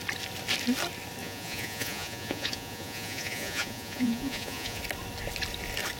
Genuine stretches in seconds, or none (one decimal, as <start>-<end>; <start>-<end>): 0.0-1.2; 4.8-6.0

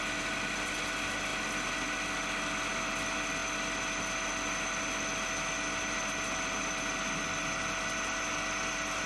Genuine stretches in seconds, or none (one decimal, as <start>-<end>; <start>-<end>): 0.0-9.1

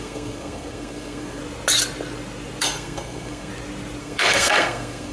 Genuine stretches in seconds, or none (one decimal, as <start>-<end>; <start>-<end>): 1.4-2.6; 3.5-4.0

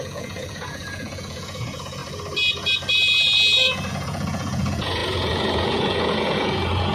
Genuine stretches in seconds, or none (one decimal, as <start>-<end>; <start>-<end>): 2.0-3.9

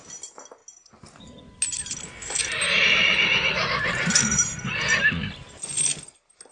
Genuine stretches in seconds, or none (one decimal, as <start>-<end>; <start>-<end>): 0.0-2.4

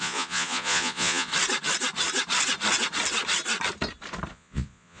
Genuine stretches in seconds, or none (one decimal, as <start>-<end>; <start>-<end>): 1.3-4.3